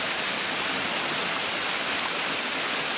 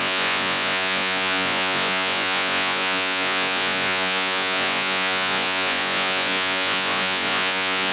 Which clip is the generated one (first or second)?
second